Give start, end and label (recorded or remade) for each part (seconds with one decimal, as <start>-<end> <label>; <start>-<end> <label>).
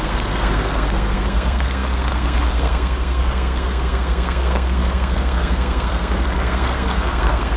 0.0-7.6 remade